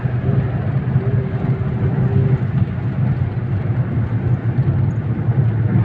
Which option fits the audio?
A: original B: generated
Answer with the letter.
A